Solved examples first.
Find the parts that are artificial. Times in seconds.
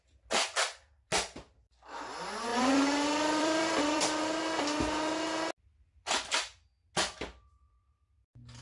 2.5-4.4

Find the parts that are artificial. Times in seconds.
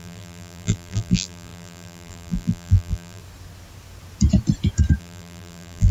0.0-3.2; 5.0-5.9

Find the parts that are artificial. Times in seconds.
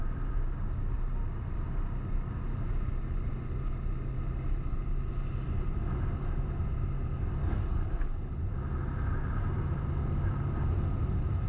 7.4-7.9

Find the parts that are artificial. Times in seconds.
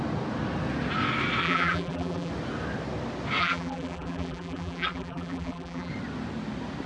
1.4-2.3; 3.4-5.9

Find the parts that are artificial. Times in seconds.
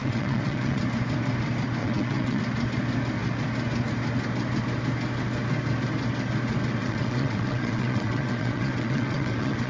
0.0-0.8; 1.8-2.4; 6.8-9.7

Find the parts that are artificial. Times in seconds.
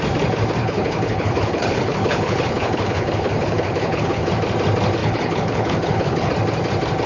0.6-4.3; 5.0-6.3